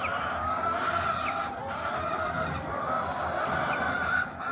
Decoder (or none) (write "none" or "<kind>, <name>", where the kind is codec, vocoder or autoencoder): vocoder, BigVGAN v2